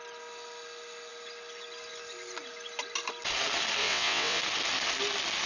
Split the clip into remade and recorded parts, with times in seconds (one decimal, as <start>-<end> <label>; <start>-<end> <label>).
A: 0.0-3.8 recorded; 3.8-4.4 remade; 4.4-5.5 recorded